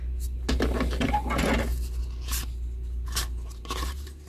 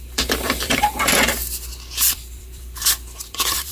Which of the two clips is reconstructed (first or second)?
second